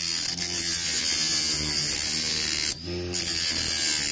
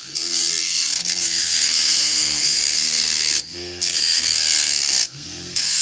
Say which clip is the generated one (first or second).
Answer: second